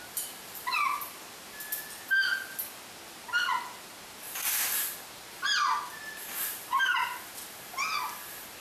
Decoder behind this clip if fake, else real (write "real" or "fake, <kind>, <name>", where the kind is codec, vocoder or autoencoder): real